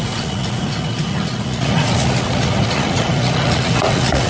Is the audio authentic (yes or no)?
no